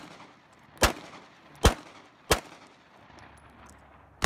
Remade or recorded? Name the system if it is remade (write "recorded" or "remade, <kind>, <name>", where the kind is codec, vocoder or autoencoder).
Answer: recorded